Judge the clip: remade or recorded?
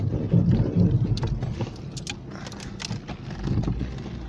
recorded